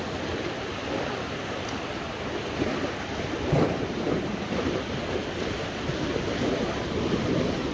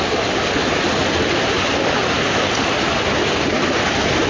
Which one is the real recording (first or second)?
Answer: second